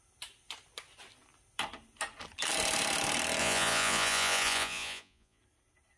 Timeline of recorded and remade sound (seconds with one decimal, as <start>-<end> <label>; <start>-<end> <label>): 0.0-3.4 recorded; 3.4-5.4 remade; 5.4-6.0 recorded